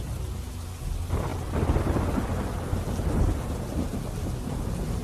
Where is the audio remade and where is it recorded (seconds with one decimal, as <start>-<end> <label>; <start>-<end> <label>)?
0.0-5.0 recorded